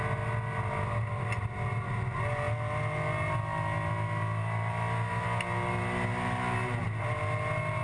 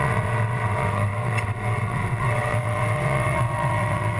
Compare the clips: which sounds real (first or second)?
first